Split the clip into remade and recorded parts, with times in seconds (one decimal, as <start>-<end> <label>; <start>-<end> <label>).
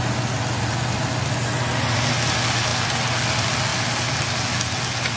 0.0-5.2 recorded